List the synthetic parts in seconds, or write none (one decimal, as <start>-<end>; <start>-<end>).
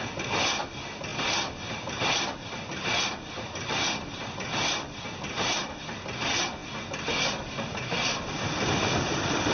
none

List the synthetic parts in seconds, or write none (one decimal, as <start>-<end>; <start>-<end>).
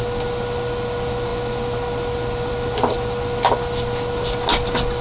none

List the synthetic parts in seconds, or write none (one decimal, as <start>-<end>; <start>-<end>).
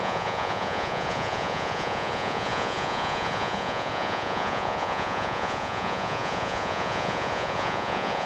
0.0-8.3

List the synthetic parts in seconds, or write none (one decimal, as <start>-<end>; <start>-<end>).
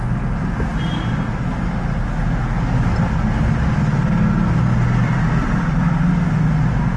5.0-6.1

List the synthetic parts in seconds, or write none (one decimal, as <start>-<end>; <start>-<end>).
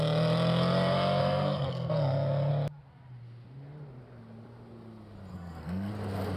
1.2-2.5; 5.3-5.9